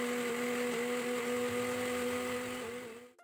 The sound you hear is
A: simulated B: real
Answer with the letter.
B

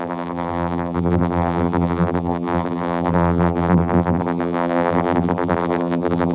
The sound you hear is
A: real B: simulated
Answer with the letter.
B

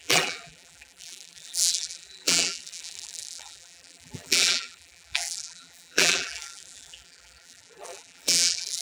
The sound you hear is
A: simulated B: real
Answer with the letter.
A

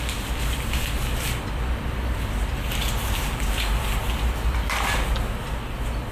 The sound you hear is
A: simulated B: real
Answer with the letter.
B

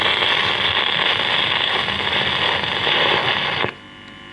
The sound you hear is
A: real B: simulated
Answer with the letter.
A